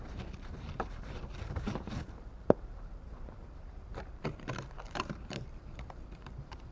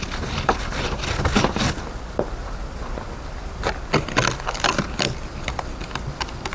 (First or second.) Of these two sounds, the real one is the second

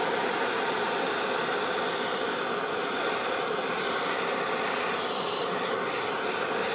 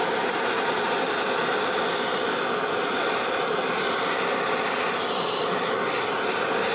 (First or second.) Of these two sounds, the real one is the second